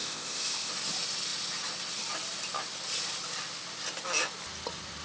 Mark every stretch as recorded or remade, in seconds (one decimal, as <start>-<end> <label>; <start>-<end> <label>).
0.0-0.7 remade; 0.7-5.0 recorded